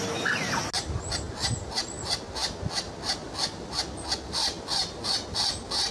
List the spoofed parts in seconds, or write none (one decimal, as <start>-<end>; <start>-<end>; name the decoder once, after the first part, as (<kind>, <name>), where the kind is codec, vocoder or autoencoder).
none